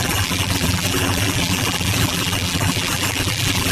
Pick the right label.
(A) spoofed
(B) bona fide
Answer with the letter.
A